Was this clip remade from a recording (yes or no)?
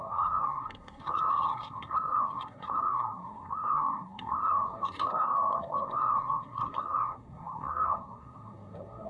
yes